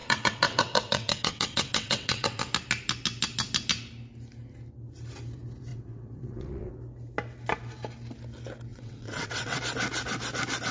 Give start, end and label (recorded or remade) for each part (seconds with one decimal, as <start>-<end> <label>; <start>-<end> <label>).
0.0-2.4 remade; 2.4-5.7 recorded; 5.7-6.7 remade; 6.7-8.7 recorded; 8.7-9.6 remade; 9.6-10.7 recorded